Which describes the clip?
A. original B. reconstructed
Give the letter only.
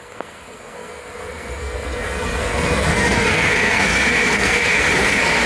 B